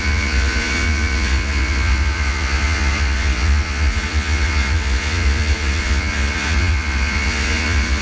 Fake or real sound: fake